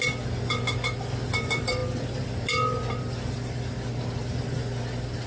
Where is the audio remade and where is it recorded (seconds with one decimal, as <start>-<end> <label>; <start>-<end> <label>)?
0.0-5.3 recorded